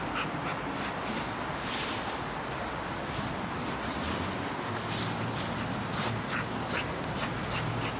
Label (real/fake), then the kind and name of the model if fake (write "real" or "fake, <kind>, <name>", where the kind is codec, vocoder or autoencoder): real